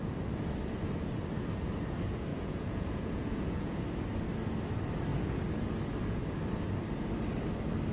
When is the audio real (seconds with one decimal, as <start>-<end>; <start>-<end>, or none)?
0.0-2.3; 3.8-5.1; 5.7-7.9

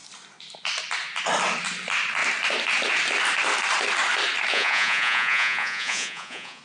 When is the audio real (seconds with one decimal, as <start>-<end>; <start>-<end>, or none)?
0.0-4.5